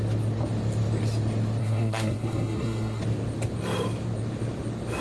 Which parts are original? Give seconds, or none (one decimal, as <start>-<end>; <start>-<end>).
0.0-1.6; 3.0-5.0